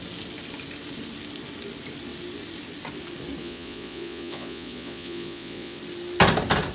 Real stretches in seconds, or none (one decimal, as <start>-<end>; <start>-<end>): 0.0-3.4; 5.8-6.7